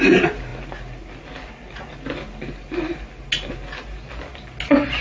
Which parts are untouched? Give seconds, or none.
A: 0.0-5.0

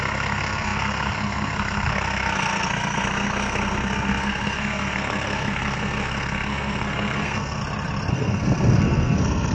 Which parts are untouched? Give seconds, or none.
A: 7.6-8.1